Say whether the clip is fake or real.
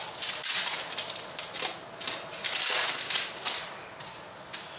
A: real